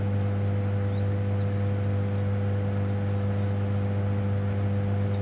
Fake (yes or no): no